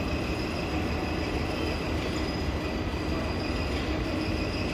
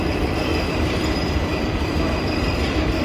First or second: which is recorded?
first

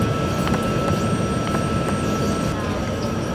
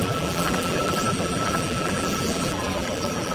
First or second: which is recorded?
first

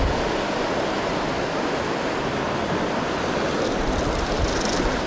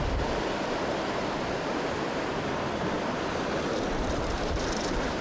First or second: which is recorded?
first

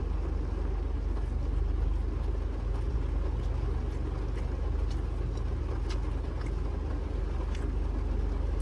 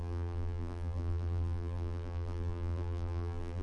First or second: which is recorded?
first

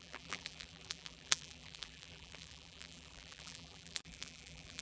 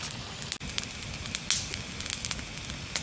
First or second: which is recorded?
second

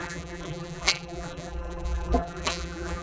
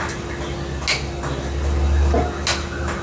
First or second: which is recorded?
second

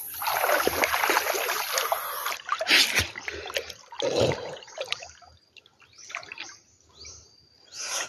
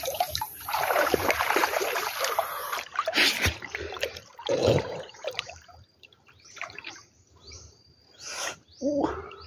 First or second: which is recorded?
first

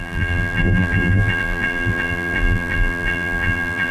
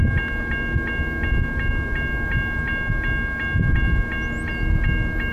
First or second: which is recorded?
second